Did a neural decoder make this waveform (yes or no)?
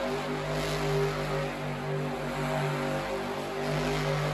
no